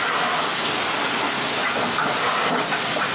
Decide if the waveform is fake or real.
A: real